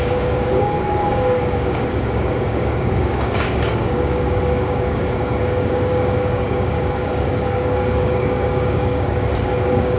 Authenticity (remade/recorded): remade